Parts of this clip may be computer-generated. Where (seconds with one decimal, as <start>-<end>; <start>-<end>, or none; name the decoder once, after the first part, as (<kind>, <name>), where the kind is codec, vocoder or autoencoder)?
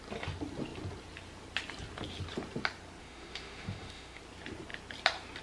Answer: 3.0-4.2 (autoencoder, DAC-VAE)